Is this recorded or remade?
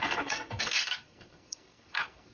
remade